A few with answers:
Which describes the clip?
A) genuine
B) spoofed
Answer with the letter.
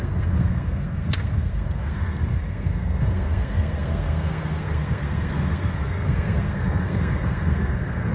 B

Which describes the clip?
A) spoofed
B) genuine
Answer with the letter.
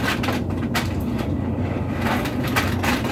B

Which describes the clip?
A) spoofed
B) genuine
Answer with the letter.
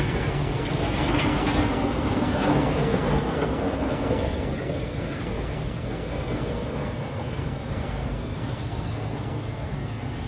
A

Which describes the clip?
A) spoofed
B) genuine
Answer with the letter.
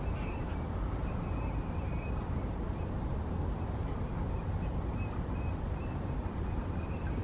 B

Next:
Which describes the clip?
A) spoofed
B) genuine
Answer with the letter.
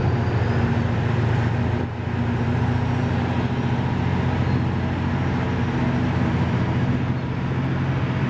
B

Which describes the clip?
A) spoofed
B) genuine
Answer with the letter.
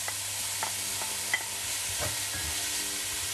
B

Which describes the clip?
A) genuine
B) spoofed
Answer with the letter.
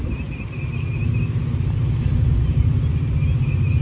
A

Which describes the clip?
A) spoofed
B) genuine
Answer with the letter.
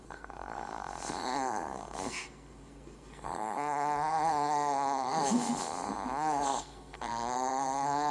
A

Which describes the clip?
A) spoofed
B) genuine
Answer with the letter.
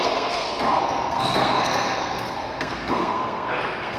A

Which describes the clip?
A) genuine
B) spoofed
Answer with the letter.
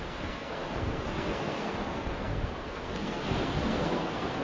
B